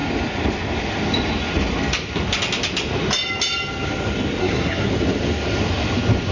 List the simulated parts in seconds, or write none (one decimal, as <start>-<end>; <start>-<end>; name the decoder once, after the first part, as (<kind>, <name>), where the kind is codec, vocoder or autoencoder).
4.4-4.9 (codec, SNAC)